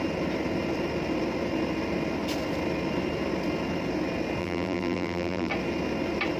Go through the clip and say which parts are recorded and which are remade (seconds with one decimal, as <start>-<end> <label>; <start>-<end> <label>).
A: 0.0-4.4 recorded; 4.4-5.5 remade; 5.5-6.4 recorded

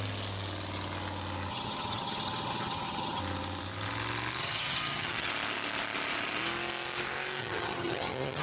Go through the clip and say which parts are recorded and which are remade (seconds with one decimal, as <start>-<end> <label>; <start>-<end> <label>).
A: 0.0-1.5 recorded; 1.5-3.2 remade; 3.2-4.4 recorded; 4.4-5.3 remade; 5.3-7.4 recorded; 7.4-8.4 remade

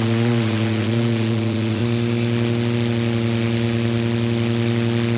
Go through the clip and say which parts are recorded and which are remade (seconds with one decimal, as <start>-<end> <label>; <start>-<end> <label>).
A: 0.0-1.8 remade; 1.8-5.2 recorded

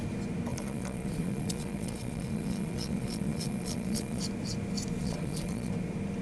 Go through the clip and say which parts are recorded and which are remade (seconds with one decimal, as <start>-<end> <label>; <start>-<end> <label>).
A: 0.0-0.5 recorded; 0.5-4.2 remade; 4.2-5.0 recorded; 5.0-5.7 remade; 5.7-6.2 recorded

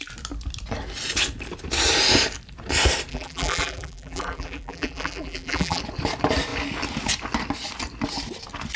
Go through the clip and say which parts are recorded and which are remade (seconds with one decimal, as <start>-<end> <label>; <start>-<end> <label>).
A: 0.0-3.1 recorded; 3.1-5.8 remade; 5.8-8.8 recorded

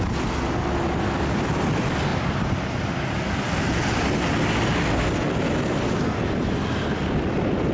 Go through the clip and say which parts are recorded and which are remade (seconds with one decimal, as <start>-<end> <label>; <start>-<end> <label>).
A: 0.0-7.7 recorded

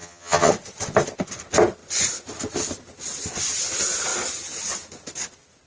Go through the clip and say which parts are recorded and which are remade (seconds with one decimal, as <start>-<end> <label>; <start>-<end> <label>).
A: 0.0-0.5 remade; 0.5-5.7 recorded